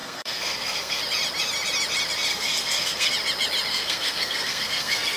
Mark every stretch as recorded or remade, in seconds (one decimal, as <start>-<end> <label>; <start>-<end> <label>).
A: 0.0-1.0 remade; 1.0-2.3 recorded; 2.3-3.1 remade; 3.1-3.7 recorded; 3.7-5.2 remade